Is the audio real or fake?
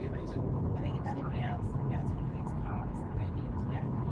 fake